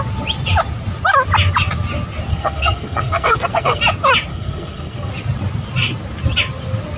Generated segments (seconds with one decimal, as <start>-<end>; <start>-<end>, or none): 2.3-3.8; 4.3-5.1

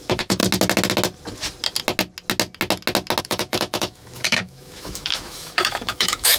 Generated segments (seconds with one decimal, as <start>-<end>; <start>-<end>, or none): 0.0-0.4; 3.2-6.4